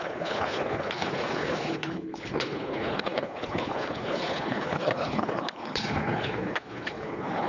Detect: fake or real fake